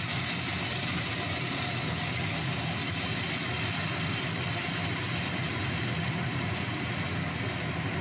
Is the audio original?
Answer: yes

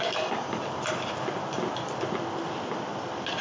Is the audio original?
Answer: yes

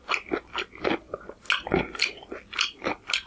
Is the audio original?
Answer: yes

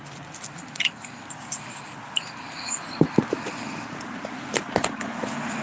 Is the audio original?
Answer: yes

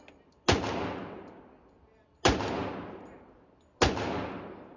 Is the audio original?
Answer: yes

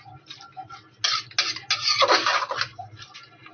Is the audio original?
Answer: yes